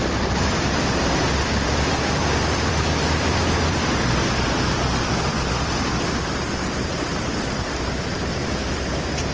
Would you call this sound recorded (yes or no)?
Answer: no